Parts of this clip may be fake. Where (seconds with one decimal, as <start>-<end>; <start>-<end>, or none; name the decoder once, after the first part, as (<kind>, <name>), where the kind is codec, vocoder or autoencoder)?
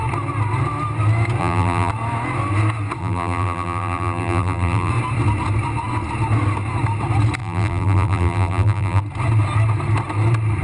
1.4-1.9 (vocoder, BigVGAN v2); 3.0-4.9; 7.4-9.0